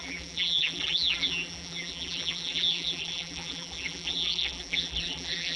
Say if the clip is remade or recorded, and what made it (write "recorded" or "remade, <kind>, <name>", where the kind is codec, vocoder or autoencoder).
remade, vocoder, BigVGAN v2